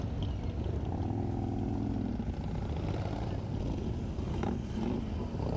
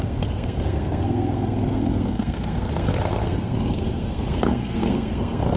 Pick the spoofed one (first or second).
second